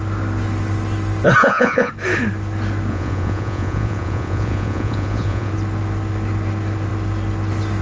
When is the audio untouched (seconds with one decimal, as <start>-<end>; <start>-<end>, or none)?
0.0-1.4; 1.9-2.9; 5.5-7.8